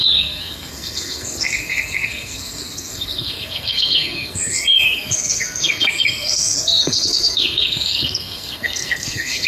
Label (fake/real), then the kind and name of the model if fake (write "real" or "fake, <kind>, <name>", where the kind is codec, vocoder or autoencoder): fake, codec, SNAC